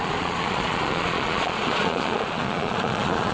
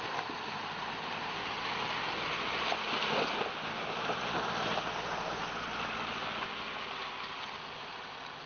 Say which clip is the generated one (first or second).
first